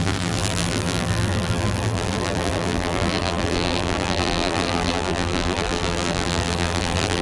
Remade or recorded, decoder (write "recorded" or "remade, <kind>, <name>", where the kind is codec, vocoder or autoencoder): remade, vocoder, BigVGAN v2